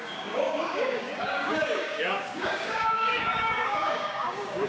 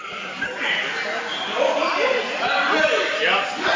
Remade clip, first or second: first